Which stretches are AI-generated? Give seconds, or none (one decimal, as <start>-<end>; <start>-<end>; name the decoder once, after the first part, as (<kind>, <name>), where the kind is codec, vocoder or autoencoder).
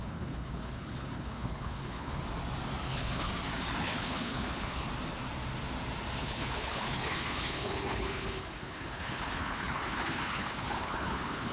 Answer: 0.0-2.2 (codec, HILCodec); 2.9-3.3; 3.8-4.9; 6.2-11.5